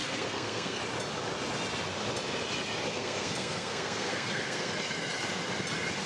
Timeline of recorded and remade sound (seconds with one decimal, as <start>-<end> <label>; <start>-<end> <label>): 0.0-0.8 remade; 0.8-2.9 recorded; 2.9-4.7 remade; 4.7-6.1 recorded

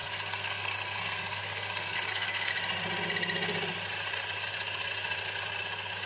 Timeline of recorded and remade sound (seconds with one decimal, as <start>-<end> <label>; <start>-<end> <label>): 0.0-2.5 remade; 2.5-6.1 recorded

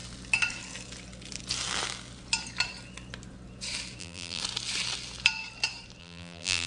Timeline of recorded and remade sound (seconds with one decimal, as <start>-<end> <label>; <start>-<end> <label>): 0.0-4.0 recorded; 4.0-4.4 remade; 4.4-6.0 recorded; 6.0-6.7 remade

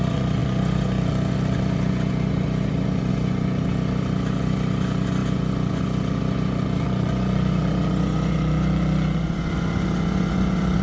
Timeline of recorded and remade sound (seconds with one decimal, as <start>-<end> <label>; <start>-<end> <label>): 0.0-10.8 remade